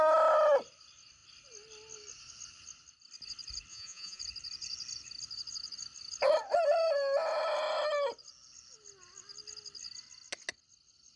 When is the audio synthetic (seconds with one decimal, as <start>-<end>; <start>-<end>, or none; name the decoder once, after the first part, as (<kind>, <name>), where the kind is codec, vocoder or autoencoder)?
3.7-4.2 (vocoder, Vocos)